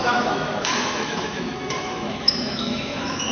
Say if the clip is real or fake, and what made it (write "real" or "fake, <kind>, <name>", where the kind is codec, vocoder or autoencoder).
fake, autoencoder, DAC-VAE